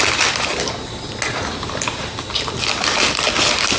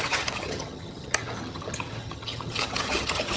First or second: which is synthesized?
second